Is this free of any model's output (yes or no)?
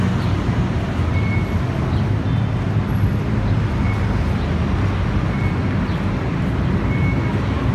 yes